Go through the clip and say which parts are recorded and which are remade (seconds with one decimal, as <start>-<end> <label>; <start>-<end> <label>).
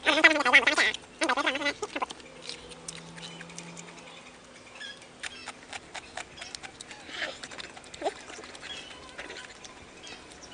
0.0-10.5 recorded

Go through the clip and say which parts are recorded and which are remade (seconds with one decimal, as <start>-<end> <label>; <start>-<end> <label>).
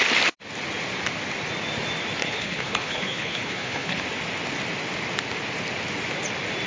0.0-2.2 recorded; 2.2-4.0 remade; 4.0-6.7 recorded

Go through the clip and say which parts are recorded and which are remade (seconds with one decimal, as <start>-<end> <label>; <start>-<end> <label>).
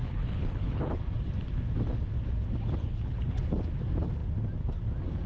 0.0-0.9 remade; 0.9-2.8 recorded; 2.8-3.4 remade; 3.4-5.3 recorded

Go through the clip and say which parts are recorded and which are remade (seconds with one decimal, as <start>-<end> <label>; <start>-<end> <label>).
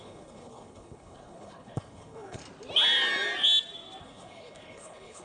0.0-2.4 remade; 2.4-4.0 recorded; 4.0-5.2 remade